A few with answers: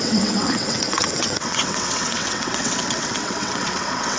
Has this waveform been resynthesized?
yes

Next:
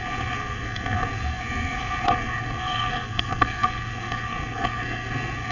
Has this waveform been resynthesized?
yes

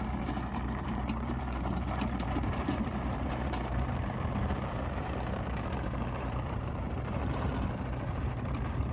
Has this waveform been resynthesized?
yes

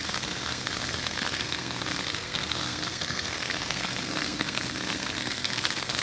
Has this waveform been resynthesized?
yes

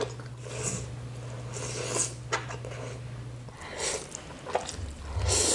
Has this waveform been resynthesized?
no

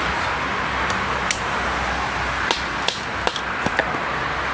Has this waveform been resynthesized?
no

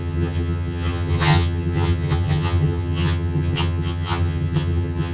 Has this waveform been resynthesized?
yes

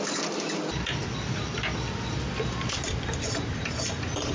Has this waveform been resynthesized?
no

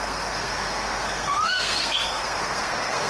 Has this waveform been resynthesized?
yes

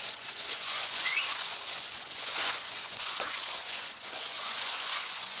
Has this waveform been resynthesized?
yes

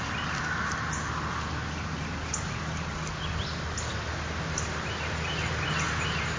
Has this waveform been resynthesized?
no